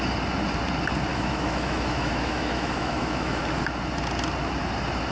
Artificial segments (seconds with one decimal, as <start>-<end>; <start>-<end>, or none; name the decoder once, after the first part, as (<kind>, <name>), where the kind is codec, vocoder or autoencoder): 1.1-3.4 (autoencoder, DAC-VAE)